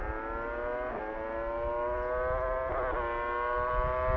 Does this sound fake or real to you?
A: real